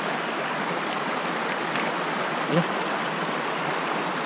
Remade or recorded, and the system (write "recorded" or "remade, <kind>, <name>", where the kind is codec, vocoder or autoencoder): recorded